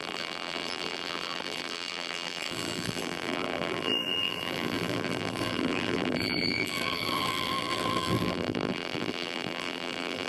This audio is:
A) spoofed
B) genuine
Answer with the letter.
A